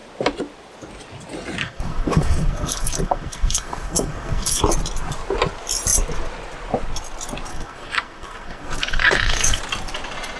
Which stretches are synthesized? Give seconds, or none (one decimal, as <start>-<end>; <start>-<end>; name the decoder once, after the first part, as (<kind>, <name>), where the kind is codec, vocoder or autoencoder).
1.6-4.6 (codec, SNAC); 7.5-9.6